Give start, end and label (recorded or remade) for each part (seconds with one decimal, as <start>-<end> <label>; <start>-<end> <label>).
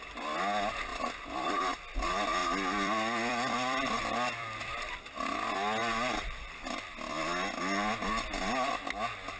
0.0-0.9 recorded; 0.9-1.6 remade; 1.6-2.4 recorded; 2.4-5.0 remade; 5.0-5.8 recorded; 5.8-7.1 remade; 7.1-9.4 recorded